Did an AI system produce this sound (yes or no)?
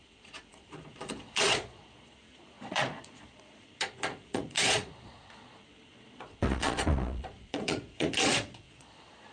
yes